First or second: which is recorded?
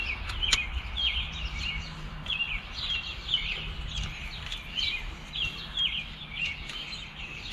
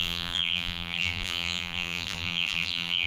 first